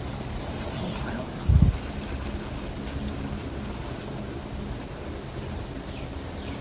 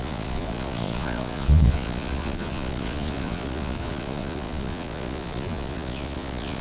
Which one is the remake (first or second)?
second